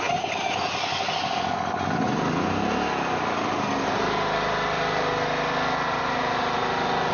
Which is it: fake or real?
real